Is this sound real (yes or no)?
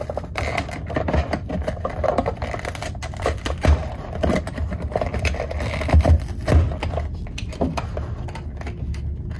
yes